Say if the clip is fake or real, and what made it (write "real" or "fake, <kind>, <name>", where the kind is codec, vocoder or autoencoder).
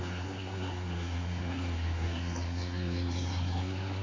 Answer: fake, codec, SNAC